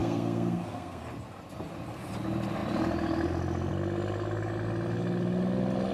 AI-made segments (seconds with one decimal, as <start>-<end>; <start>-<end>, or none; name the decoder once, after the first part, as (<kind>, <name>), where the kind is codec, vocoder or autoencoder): 0.0-1.0 (codec, SNAC)